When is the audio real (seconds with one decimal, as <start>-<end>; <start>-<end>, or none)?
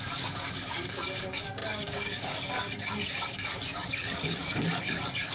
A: none